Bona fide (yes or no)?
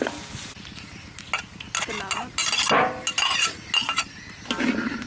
yes